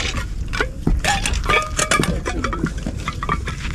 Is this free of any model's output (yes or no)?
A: yes